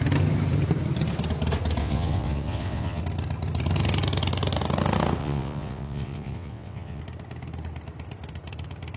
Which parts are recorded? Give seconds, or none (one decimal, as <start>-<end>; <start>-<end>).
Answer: 0.0-1.8; 3.0-5.2; 7.0-9.0